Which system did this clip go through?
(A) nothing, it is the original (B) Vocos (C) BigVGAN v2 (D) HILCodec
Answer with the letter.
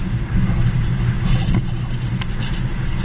A